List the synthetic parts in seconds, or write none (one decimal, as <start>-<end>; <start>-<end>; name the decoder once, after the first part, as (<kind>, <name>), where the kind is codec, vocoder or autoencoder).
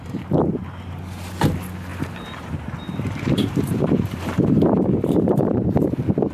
1.9-5.7 (vocoder, BigVGAN v2)